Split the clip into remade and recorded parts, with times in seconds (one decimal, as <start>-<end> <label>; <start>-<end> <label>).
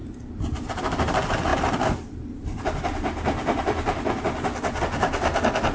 0.0-5.7 recorded